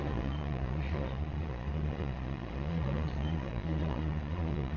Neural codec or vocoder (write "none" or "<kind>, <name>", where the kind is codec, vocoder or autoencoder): vocoder, Vocos